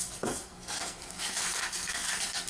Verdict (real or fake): fake